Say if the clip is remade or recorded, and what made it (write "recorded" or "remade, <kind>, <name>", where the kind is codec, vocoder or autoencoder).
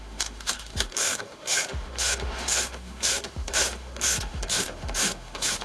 remade, autoencoder, DAC-VAE